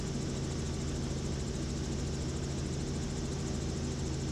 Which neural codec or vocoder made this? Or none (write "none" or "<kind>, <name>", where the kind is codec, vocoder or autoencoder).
none